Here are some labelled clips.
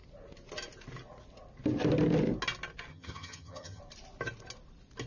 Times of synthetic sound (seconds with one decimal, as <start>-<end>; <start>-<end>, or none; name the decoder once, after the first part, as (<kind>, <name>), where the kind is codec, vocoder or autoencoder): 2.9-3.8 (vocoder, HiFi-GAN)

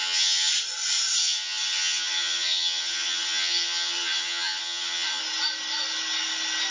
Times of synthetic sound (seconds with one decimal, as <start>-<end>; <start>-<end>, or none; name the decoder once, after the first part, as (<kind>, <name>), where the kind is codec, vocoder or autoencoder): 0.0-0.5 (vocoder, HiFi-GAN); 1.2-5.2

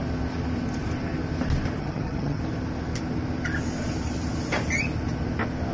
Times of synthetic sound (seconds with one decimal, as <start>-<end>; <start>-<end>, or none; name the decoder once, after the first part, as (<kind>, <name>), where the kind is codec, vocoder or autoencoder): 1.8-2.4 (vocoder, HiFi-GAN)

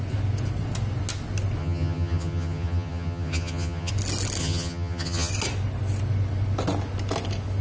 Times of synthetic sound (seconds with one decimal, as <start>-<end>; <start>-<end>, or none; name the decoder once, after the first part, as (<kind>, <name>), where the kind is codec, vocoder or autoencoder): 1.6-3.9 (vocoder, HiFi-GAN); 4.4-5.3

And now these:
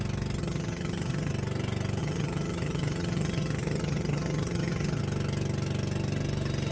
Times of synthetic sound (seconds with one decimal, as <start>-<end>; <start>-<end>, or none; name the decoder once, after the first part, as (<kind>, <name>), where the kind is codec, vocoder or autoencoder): 0.4-1.3 (vocoder, HiFi-GAN); 2.0-5.0

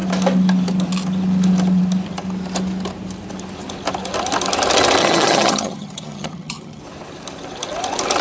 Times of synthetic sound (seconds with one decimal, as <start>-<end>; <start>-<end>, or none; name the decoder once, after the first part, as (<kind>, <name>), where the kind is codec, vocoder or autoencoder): 5.0-6.8 (vocoder, HiFi-GAN)

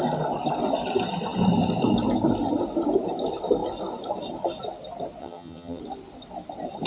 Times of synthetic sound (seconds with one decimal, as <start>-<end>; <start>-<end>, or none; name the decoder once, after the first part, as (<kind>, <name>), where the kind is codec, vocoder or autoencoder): 5.2-5.8 (vocoder, HiFi-GAN)